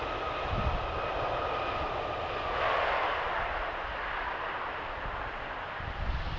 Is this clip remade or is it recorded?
recorded